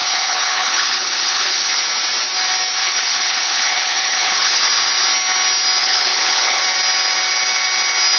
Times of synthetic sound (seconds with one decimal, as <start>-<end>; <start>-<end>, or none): 0.0-1.8; 2.8-4.6; 5.8-6.6